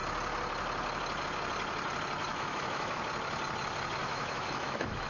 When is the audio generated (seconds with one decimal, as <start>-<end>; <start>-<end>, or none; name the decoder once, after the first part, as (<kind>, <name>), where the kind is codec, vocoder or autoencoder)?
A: 2.3-3.0 (autoencoder, DAC-VAE); 4.0-5.1